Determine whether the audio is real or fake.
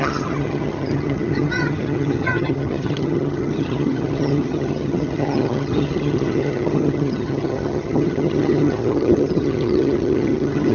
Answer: fake